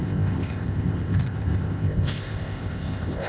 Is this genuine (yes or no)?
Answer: no